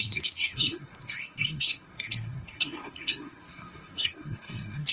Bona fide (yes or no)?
no